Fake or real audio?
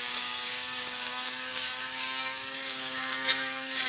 fake